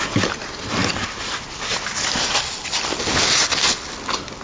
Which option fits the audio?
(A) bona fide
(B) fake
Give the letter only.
A